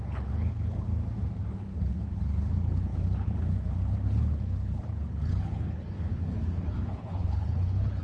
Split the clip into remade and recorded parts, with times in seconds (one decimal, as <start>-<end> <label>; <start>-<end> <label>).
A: 0.0-0.9 remade; 0.9-1.5 recorded; 1.5-8.0 remade